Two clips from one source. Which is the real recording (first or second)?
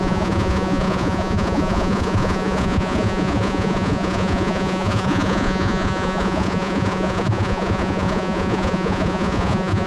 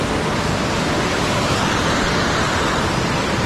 second